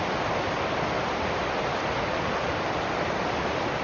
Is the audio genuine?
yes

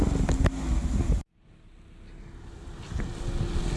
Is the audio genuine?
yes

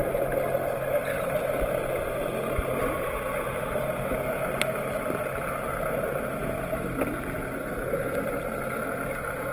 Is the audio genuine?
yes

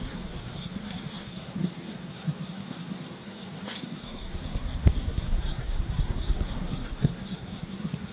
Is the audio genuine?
no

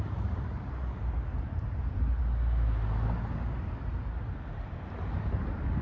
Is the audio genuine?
yes